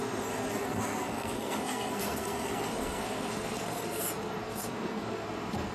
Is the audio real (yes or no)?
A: no